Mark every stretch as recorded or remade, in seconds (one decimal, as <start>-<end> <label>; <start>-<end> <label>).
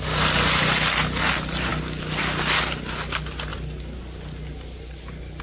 0.0-5.4 recorded